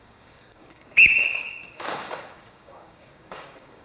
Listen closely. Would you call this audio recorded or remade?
remade